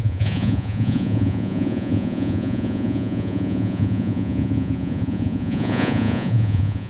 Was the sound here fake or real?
fake